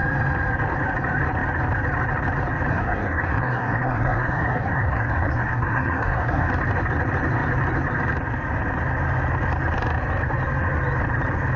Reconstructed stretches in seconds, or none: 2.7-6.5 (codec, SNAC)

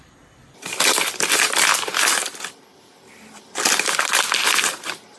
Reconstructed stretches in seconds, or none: 0.0-5.2 (vocoder, BigVGAN v2)

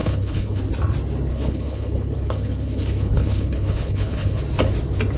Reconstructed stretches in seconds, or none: 0.0-0.6 (codec, HILCodec); 1.3-4.4

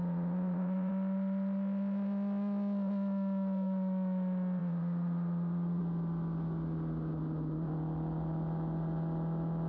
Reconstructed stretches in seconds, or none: 0.0-0.9 (vocoder, Vocos); 4.6-5.8

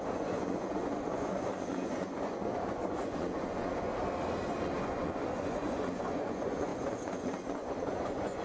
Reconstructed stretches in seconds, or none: 0.0-3.9 (vocoder, Vocos); 4.8-8.4